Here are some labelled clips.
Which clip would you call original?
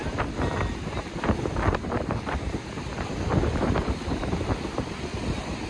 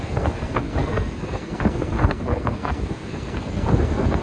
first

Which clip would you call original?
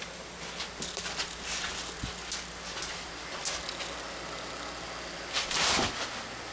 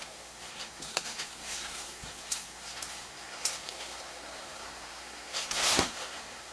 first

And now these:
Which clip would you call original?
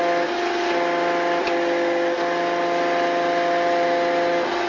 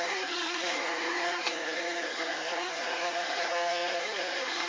first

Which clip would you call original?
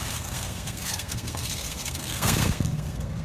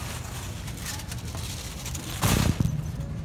second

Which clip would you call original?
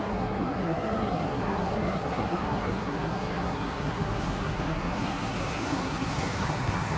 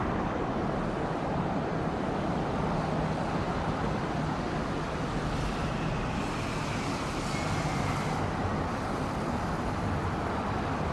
second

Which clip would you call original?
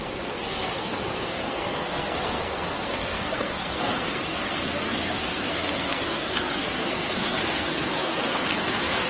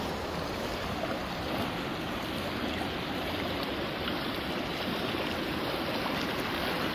second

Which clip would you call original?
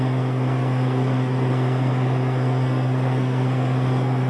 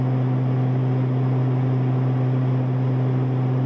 second